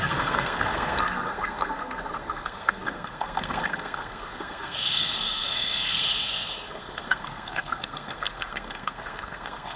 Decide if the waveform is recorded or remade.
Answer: remade